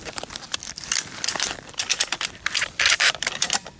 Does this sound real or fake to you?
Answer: fake